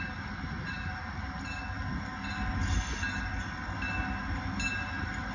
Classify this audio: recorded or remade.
recorded